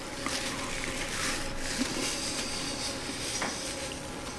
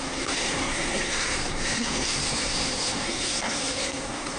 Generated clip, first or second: second